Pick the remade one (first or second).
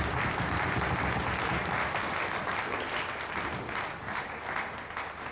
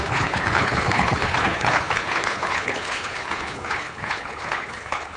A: second